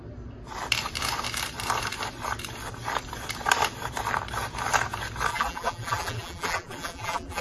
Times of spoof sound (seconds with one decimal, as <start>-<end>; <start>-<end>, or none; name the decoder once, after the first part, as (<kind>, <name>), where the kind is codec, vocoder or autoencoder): 5.3-7.4 (vocoder, BigVGAN v2)